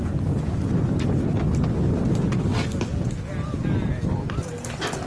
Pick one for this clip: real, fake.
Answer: real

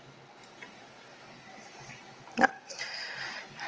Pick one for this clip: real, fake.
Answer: real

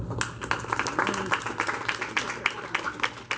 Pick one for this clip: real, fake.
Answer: real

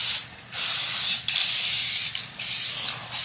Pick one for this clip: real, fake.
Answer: real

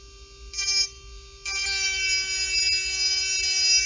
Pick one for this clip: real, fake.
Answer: real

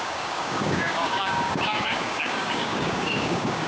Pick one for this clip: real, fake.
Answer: fake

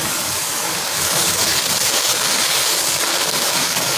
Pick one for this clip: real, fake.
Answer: fake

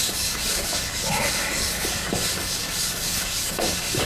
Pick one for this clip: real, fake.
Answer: fake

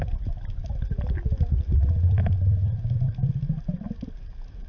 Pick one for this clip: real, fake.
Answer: real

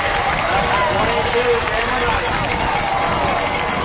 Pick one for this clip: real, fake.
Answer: real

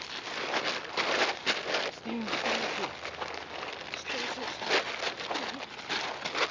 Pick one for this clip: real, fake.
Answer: real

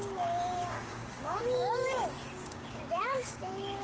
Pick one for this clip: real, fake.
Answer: fake